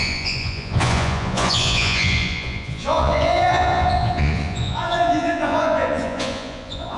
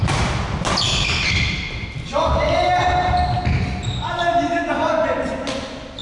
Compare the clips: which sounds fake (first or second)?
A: first